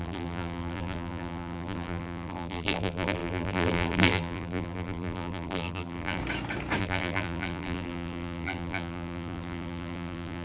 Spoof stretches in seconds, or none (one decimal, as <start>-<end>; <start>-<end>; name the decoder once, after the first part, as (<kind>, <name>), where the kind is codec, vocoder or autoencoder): 0.0-6.2 (vocoder, BigVGAN v2); 6.8-10.4